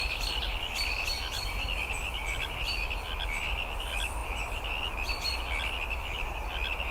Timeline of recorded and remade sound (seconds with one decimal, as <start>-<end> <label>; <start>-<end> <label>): 0.0-6.9 recorded